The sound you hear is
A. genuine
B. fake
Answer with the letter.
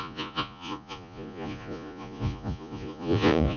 B